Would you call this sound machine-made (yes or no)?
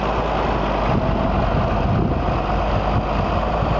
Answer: no